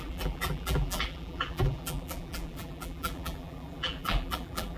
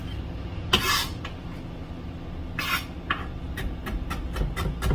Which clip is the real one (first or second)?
second